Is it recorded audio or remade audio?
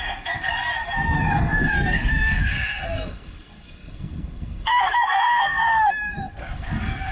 remade